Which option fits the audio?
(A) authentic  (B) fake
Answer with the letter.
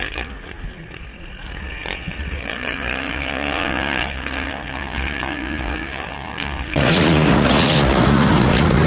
B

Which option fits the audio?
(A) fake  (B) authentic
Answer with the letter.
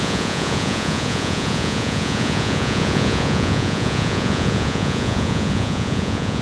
A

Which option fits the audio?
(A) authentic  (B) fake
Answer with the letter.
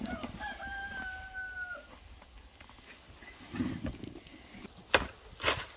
A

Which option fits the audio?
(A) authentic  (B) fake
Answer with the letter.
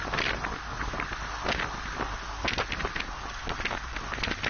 A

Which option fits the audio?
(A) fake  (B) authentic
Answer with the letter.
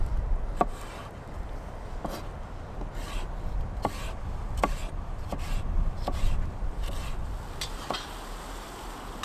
B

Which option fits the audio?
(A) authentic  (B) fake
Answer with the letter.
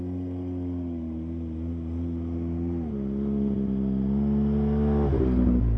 A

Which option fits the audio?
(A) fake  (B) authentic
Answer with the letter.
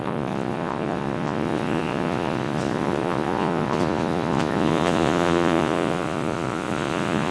A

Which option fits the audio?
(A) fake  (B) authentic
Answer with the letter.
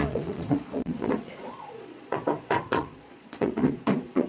A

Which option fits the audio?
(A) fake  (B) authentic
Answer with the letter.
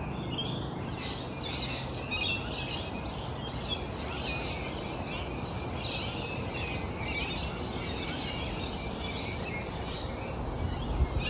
B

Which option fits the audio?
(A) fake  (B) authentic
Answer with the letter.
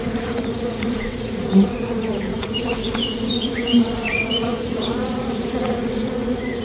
A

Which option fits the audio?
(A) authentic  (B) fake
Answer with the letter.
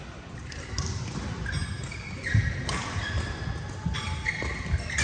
A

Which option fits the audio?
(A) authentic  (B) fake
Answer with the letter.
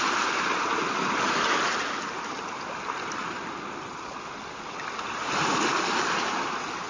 A